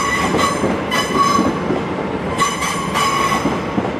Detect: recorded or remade recorded